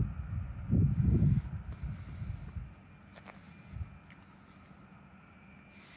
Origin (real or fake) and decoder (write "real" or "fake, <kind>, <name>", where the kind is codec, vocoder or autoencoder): real